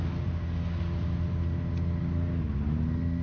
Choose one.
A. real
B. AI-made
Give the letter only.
A